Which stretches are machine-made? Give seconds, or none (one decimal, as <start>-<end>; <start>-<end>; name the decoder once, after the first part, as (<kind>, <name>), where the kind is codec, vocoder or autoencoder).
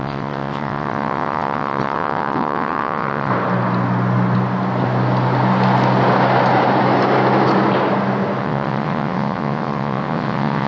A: 0.0-3.3 (vocoder, WaveNeXt); 8.4-10.7